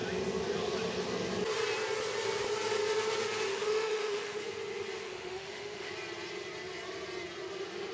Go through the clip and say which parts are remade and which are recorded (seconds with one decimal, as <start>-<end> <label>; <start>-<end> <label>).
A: 0.0-3.5 recorded; 3.5-4.4 remade; 4.4-5.0 recorded; 5.0-5.9 remade; 5.9-7.9 recorded